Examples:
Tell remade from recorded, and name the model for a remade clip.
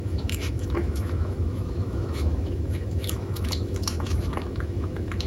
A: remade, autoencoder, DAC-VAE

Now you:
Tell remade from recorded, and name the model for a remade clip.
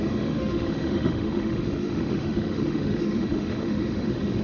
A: remade, autoencoder, DAC-VAE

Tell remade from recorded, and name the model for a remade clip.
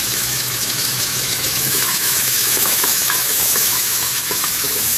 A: remade, autoencoder, DAC-VAE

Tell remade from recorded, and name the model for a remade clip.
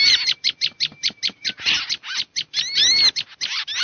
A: recorded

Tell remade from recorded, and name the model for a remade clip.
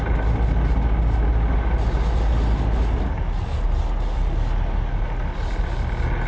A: recorded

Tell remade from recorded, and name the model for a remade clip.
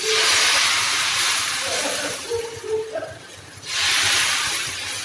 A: recorded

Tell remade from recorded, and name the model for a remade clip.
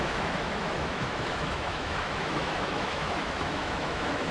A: remade, autoencoder, DAC-VAE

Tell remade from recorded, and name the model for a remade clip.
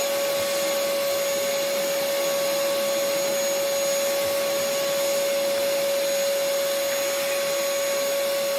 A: recorded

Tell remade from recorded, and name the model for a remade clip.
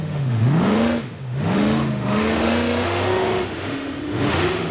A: remade, autoencoder, DAC-VAE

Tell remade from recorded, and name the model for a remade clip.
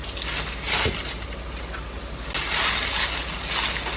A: recorded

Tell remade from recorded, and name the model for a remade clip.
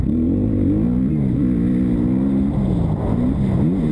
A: recorded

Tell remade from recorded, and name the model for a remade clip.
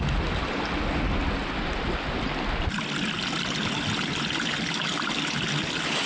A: recorded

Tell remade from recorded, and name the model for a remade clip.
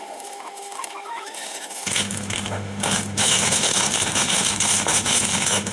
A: remade, autoencoder, DAC-VAE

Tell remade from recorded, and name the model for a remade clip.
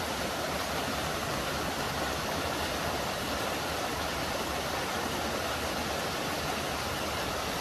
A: recorded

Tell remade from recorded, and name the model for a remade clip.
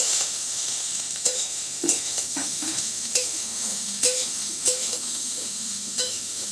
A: remade, autoencoder, DAC-VAE